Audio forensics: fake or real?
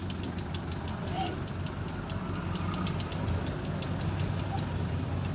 real